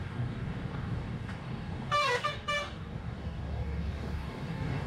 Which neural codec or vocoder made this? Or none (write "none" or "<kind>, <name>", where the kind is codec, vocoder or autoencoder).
codec, DAC